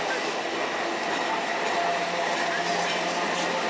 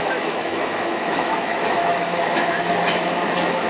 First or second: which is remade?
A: second